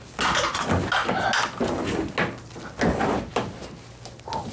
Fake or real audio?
real